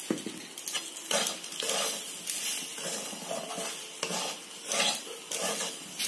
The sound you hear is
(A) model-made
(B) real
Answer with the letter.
B